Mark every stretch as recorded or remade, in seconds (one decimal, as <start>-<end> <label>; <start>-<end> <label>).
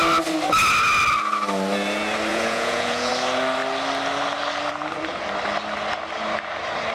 0.0-2.3 recorded; 2.3-3.1 remade; 3.1-6.9 recorded